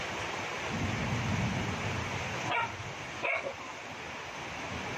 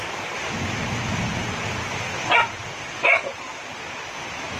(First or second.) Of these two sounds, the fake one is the first